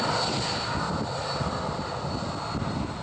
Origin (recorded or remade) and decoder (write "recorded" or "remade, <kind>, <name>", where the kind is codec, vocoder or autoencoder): recorded